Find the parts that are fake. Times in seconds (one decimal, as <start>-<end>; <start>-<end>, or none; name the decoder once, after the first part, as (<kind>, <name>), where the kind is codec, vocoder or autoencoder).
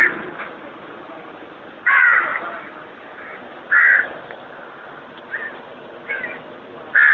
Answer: none